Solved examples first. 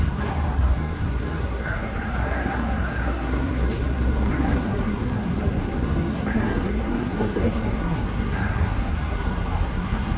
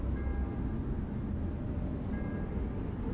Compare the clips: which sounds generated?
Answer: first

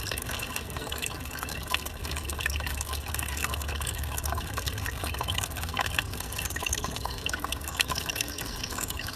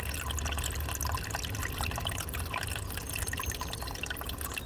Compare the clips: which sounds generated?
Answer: first